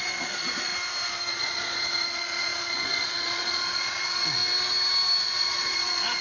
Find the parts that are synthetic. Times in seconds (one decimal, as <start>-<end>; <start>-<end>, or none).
0.0-0.7; 1.3-4.4; 5.2-6.2